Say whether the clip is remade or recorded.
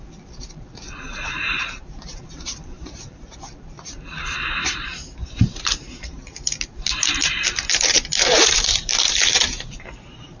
remade